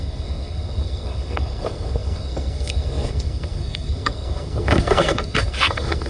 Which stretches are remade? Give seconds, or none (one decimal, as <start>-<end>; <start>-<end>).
0.0-6.1